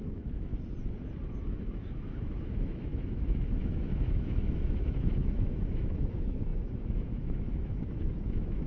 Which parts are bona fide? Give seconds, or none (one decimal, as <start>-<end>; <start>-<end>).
0.5-1.4